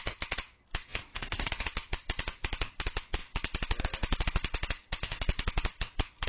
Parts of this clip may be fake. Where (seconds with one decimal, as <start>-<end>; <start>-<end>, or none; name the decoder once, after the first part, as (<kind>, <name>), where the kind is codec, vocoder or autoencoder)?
1.0-1.5 (codec, ZipCodec)